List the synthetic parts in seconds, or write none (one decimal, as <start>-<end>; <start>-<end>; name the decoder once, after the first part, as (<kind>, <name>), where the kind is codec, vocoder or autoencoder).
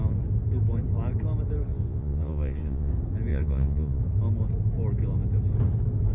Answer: 1.7-2.9 (vocoder, Vocos); 3.3-4.0